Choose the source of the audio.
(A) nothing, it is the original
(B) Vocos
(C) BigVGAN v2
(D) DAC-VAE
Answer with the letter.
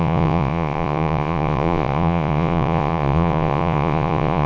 B